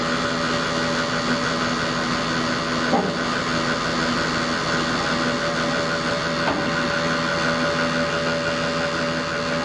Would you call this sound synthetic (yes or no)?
no